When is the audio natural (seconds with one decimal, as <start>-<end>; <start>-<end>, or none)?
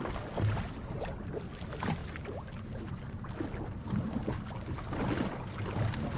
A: 0.0-6.2